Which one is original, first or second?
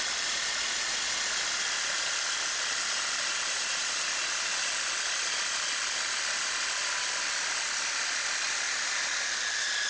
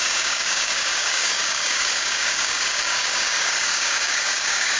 first